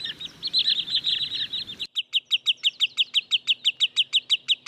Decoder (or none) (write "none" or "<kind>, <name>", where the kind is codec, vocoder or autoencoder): none